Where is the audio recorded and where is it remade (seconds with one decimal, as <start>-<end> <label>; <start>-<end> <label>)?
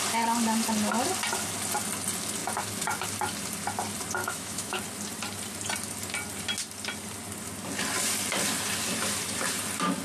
0.0-4.2 recorded; 4.2-4.8 remade; 4.8-10.0 recorded